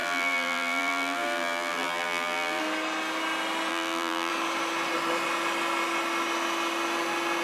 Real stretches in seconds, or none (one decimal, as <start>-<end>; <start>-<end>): 2.6-3.7; 4.3-7.4